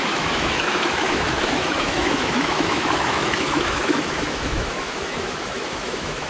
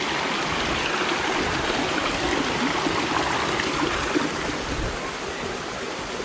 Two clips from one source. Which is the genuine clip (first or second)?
second